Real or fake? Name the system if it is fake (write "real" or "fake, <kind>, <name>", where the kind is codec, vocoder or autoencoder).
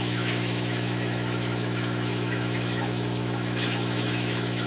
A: fake, autoencoder, DAC-VAE